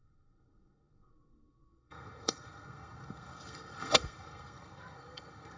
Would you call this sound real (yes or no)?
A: no